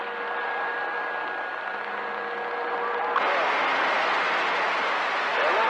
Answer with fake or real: real